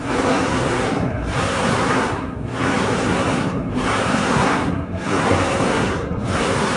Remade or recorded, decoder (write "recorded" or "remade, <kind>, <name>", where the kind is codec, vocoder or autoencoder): remade, codec, SNAC